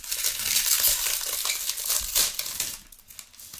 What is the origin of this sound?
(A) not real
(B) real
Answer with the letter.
B